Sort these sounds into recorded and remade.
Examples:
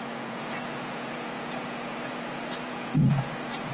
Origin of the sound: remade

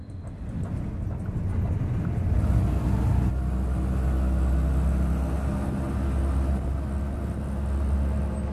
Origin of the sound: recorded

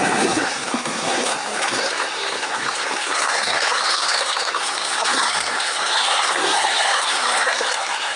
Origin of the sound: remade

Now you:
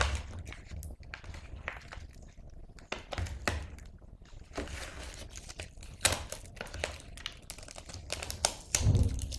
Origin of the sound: recorded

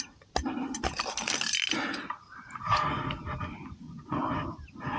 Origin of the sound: recorded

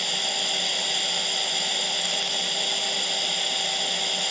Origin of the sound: recorded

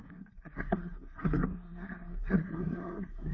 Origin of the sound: remade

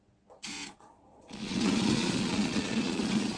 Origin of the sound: remade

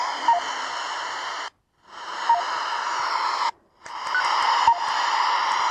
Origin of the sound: recorded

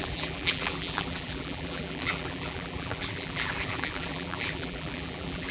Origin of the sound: remade